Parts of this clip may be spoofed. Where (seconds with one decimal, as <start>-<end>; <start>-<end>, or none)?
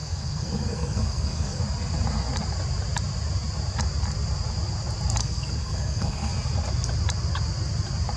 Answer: 0.0-1.6; 5.2-6.3